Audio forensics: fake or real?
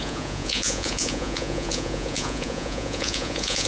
fake